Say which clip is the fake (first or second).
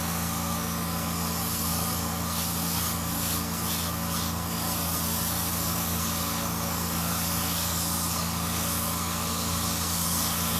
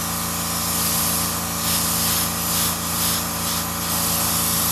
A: first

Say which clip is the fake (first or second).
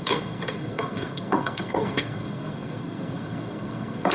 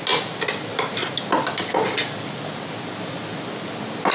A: first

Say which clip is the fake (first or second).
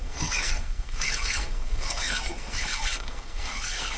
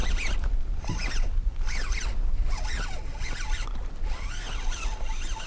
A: first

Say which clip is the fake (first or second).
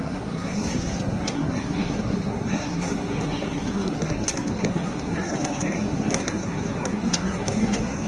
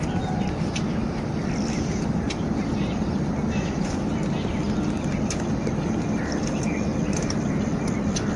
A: first